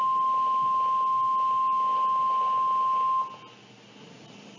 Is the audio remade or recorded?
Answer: recorded